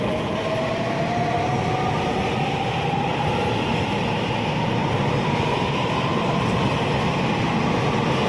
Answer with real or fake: real